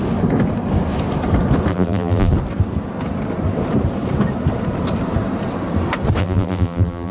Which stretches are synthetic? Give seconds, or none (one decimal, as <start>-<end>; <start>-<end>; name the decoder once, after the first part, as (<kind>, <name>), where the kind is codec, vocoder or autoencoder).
1.7-2.3 (vocoder, BigVGAN v2); 6.2-7.1